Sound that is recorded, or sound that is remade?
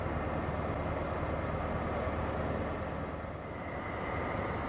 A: recorded